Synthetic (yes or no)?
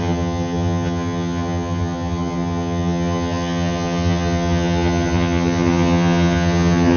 yes